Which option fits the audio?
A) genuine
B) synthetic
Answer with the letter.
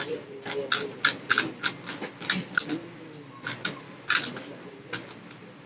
A